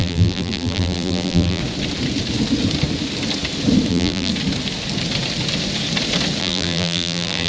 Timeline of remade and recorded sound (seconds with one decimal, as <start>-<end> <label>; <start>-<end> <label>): 0.0-1.6 remade; 1.6-3.9 recorded; 3.9-4.3 remade; 4.3-6.4 recorded; 6.4-7.5 remade